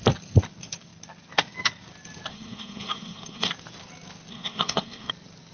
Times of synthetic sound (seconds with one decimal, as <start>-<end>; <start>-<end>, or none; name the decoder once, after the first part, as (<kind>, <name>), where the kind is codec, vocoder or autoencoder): 2.3-3.5 (codec, SNAC); 4.3-5.1